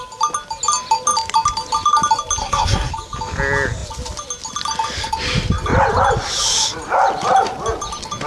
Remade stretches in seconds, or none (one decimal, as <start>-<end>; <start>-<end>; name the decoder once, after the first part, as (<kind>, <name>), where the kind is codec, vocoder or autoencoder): 2.4-2.9 (codec, SNAC)